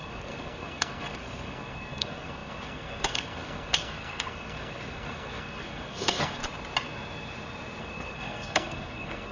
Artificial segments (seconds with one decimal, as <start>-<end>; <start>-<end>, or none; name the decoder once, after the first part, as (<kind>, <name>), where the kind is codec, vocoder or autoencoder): 0.0-6.4 (codec, SNAC); 7.8-9.3